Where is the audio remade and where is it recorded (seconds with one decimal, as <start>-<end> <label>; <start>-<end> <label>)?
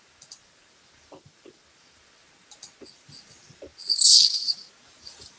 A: 0.0-5.4 recorded